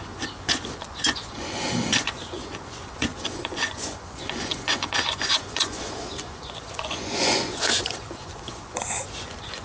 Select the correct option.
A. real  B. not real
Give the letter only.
B